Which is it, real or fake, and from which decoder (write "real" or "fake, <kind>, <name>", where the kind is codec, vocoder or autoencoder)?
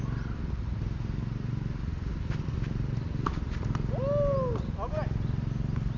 real